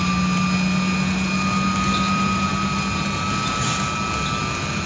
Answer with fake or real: real